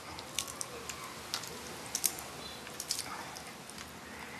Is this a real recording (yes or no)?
yes